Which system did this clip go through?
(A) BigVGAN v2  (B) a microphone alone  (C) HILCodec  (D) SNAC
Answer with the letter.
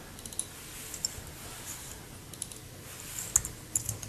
B